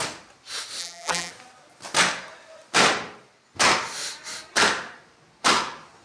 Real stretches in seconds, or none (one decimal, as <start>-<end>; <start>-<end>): 0.0-0.8; 1.3-6.0

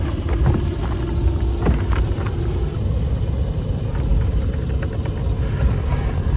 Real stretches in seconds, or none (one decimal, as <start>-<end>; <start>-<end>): 0.0-6.4

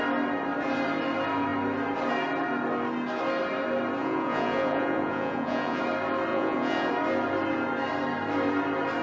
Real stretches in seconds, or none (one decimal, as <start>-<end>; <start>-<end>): 0.0-4.0; 5.8-6.3; 6.9-9.0

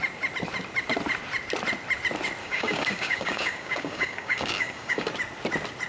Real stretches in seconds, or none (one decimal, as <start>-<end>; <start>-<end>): 0.0-2.4; 5.1-5.9

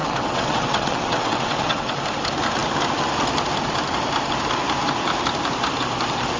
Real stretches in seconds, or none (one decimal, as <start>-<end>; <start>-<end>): 2.0-6.4

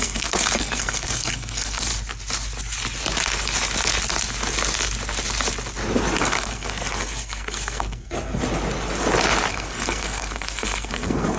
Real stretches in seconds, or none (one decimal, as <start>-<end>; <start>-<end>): 1.9-6.2; 8.4-9.5

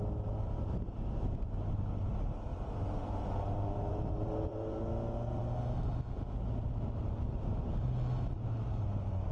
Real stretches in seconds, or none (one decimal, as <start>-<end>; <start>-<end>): 0.0-2.5; 4.8-8.1; 8.8-9.3